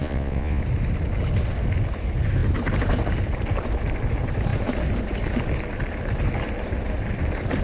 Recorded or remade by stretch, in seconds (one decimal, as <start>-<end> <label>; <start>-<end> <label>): 0.0-0.6 remade; 0.6-7.6 recorded